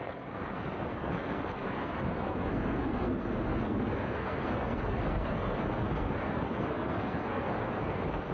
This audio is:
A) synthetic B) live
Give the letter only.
A